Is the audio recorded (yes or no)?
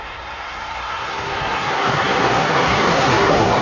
no